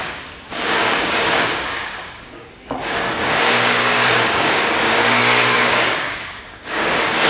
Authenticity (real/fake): fake